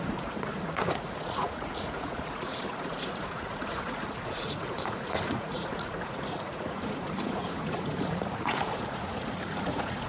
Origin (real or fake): fake